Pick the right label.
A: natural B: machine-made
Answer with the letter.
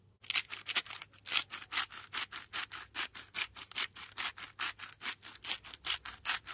A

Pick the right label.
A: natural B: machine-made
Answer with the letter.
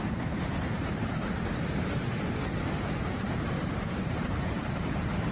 B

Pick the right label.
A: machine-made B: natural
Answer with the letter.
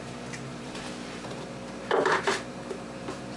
A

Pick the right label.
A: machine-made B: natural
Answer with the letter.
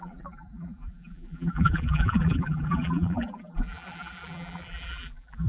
A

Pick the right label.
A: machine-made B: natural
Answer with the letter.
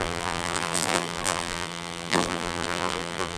A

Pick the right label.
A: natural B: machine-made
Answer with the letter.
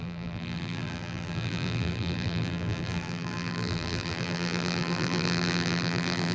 B